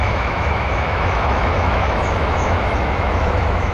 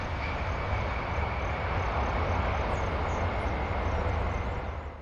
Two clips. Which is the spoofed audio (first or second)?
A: first